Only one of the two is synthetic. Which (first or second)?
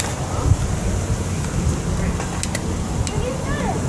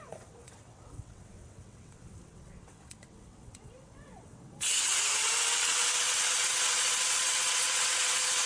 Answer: second